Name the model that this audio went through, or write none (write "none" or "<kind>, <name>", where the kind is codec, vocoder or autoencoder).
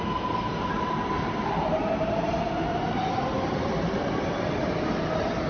vocoder, BigVGAN v2